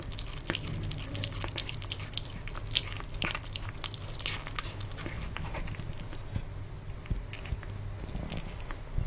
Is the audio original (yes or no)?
yes